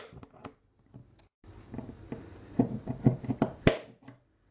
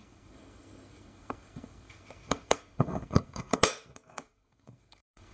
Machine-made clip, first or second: second